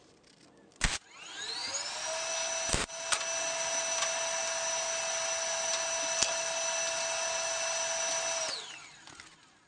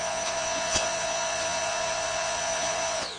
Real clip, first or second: first